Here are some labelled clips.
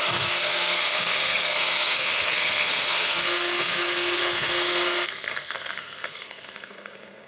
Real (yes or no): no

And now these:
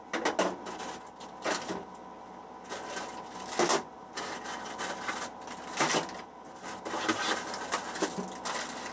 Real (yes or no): yes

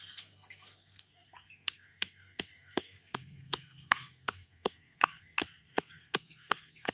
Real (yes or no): no